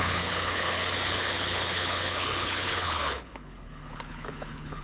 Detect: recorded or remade remade